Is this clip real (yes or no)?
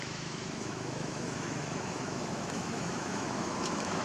no